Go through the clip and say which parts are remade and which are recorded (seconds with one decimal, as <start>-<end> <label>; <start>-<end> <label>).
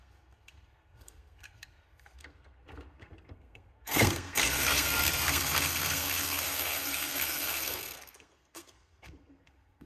0.0-9.9 remade